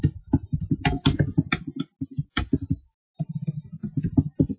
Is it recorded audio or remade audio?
recorded